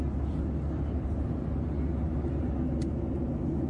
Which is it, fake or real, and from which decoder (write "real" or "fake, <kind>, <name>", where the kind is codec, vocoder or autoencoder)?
real